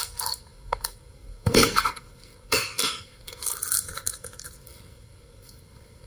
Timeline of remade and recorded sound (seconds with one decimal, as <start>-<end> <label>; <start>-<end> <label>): 0.0-6.1 remade